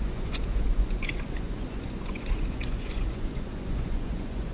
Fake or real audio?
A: fake